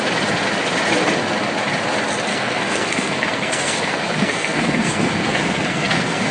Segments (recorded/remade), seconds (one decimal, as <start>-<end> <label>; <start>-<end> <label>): 0.0-2.3 recorded; 2.3-6.3 remade